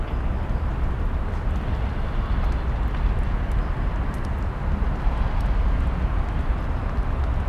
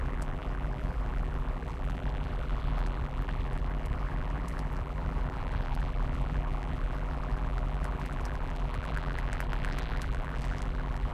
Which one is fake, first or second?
second